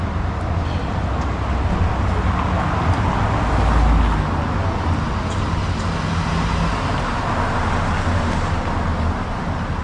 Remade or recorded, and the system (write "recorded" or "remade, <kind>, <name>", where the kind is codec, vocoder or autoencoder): recorded